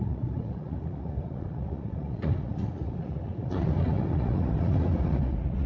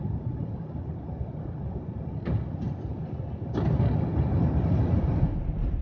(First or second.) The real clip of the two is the second